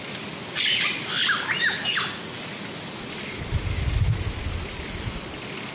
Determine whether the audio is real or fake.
real